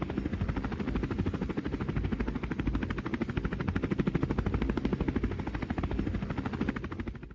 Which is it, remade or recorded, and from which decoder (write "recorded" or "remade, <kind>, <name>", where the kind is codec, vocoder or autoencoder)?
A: recorded